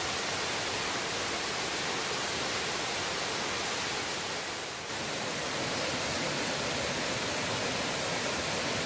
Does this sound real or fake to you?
real